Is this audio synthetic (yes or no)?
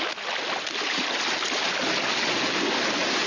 no